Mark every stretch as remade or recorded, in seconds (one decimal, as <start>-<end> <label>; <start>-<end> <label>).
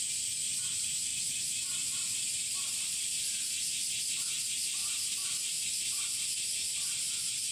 0.0-1.1 recorded; 1.1-3.1 remade; 3.1-4.8 recorded; 4.8-7.5 remade